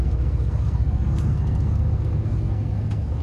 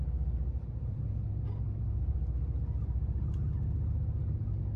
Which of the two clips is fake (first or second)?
first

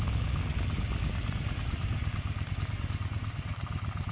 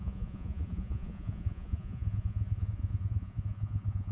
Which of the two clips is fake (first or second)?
second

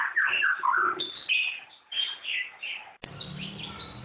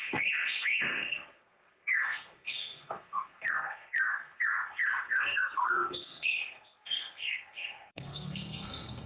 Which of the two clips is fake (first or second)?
second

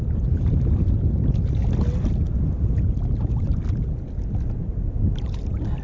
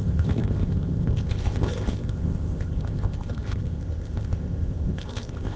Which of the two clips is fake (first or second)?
second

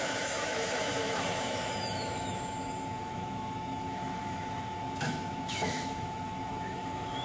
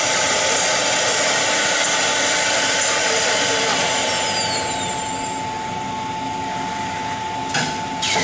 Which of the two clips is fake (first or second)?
first